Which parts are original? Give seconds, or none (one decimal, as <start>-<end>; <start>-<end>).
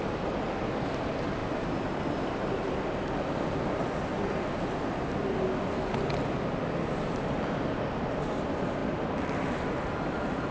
0.0-10.5